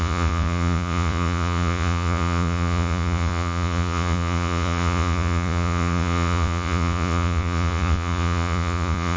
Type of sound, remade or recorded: remade